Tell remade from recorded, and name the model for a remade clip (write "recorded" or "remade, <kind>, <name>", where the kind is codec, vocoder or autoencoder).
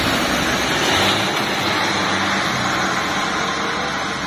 recorded